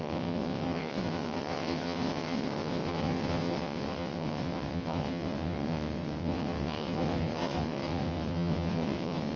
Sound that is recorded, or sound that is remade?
remade